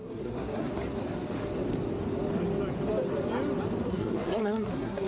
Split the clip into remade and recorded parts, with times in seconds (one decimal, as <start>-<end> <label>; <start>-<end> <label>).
0.0-0.7 remade; 0.7-3.8 recorded; 3.8-5.1 remade